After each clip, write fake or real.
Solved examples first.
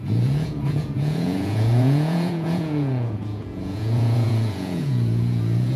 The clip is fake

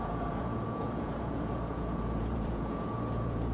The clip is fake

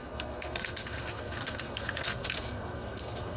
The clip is fake